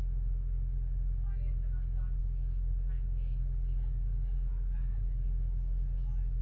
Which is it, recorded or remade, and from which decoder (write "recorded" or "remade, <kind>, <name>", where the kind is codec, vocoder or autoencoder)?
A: remade, codec, DAC